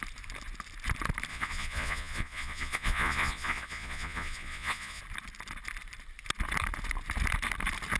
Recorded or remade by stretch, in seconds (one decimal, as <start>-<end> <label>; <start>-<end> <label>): 0.0-1.3 recorded; 1.3-5.0 remade; 5.0-8.0 recorded